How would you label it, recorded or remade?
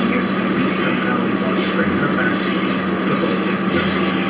recorded